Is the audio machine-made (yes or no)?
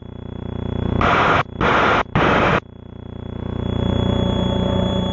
no